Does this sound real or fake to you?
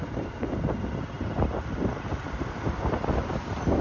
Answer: real